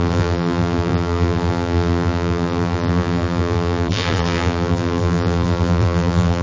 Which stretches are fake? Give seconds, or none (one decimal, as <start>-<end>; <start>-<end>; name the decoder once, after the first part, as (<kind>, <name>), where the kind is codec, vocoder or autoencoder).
0.0-6.4 (vocoder, BigVGAN v2)